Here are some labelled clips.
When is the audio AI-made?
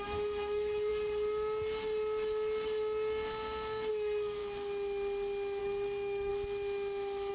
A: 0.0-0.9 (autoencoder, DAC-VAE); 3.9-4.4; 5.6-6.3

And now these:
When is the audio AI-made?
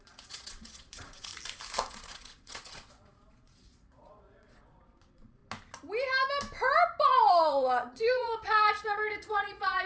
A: 0.0-1.3 (vocoder, Vocos); 1.9-5.4; 7.3-9.9